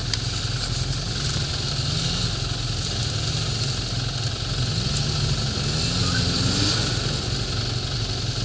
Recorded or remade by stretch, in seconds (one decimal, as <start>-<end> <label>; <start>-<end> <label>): 0.0-8.4 recorded